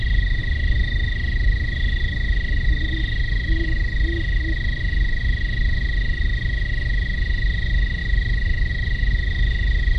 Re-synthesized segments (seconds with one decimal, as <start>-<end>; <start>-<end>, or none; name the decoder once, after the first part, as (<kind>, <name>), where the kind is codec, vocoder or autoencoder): none